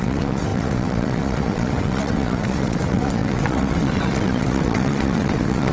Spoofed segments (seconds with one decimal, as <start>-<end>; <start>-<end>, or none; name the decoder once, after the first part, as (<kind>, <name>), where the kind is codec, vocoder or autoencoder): 0.0-5.7 (vocoder, WaveNeXt)

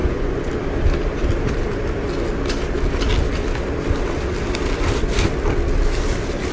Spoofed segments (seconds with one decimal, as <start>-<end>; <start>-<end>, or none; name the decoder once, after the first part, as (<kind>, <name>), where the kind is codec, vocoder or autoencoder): 0.0-0.5 (vocoder, Vocos)

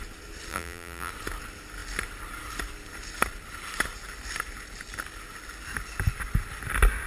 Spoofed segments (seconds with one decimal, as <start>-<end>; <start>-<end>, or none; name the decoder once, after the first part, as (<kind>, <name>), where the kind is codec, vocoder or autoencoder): 0.5-1.1 (vocoder, BigVGAN v2)

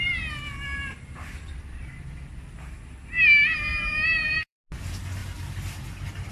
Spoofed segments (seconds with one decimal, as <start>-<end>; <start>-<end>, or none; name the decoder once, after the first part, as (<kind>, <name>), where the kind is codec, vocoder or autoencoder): 0.7-2.4 (vocoder, BigVGAN v2); 3.7-4.6

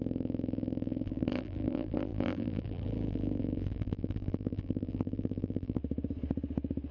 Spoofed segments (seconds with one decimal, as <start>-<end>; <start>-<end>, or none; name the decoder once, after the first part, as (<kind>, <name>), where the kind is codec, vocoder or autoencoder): 0.0-5.8 (vocoder, BigVGAN v2)